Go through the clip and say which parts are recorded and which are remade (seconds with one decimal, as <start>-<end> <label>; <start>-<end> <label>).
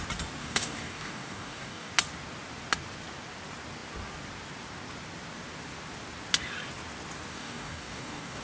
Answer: 0.0-0.4 recorded; 0.4-1.9 remade; 1.9-7.3 recorded; 7.3-8.4 remade